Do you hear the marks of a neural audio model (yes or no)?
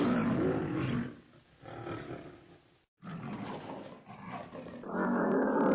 no